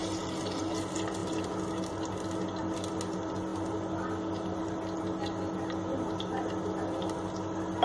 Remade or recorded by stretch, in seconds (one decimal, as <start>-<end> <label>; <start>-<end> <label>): 0.0-7.8 recorded